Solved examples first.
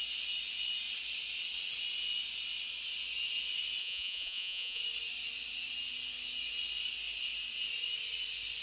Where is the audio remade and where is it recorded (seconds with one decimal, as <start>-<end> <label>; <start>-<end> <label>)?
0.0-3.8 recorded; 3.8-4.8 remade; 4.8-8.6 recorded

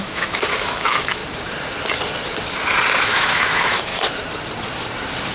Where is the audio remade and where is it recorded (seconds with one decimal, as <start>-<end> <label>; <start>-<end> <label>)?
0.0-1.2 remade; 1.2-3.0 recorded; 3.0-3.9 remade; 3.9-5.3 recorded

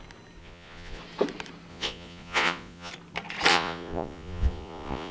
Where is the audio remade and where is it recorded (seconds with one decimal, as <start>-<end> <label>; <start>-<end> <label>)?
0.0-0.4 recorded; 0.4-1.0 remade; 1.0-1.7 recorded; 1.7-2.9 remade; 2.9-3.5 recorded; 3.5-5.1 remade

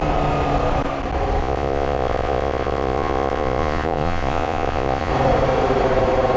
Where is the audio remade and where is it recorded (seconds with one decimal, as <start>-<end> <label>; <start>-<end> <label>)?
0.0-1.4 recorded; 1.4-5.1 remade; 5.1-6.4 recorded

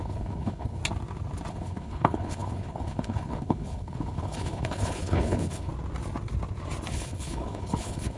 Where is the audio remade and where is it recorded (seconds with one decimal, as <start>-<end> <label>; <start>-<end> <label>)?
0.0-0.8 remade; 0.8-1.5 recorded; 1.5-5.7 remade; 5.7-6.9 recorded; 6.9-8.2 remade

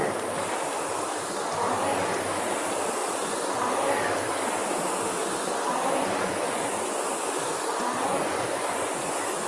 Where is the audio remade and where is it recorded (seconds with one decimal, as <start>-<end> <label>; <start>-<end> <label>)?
0.0-3.0 recorded; 3.0-3.6 remade; 3.6-5.2 recorded; 5.2-9.5 remade

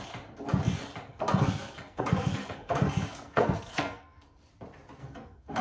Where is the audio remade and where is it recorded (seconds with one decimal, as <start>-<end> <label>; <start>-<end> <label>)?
0.0-1.1 recorded; 1.1-4.5 remade; 4.5-5.0 recorded; 5.0-5.6 remade